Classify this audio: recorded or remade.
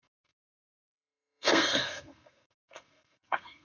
remade